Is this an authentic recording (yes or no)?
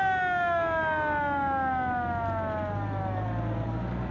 yes